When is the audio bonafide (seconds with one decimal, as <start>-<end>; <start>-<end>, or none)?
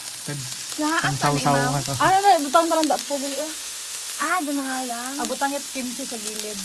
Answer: 0.0-3.0; 4.9-6.6